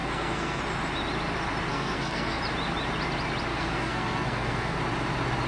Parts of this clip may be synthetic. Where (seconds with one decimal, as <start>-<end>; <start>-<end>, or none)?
0.0-0.6; 1.7-2.4; 3.5-4.8